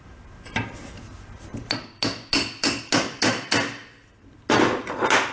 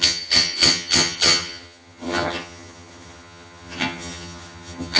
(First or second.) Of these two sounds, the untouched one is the first